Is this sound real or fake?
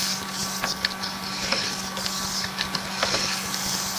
fake